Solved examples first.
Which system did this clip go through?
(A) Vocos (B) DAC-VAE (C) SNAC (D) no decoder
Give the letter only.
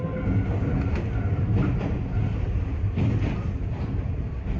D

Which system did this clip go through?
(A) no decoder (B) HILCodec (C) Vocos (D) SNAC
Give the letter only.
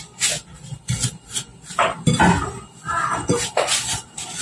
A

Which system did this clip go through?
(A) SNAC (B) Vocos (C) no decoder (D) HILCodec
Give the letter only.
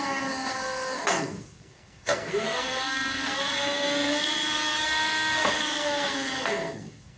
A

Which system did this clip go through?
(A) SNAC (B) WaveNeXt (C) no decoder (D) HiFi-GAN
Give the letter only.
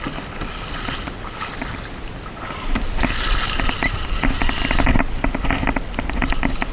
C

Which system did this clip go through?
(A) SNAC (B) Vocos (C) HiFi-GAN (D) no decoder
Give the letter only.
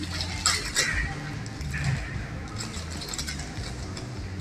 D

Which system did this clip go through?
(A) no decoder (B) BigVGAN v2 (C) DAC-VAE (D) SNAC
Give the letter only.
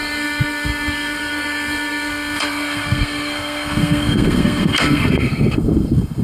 D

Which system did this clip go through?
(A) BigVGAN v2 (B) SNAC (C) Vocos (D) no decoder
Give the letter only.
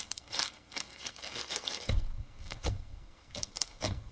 B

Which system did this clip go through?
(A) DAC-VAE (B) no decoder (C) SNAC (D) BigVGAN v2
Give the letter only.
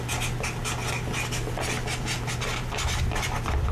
B